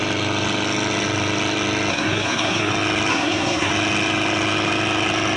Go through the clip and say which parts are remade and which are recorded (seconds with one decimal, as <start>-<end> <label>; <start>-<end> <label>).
0.0-1.9 recorded; 1.9-2.7 remade; 2.7-3.1 recorded; 3.1-3.7 remade; 3.7-5.4 recorded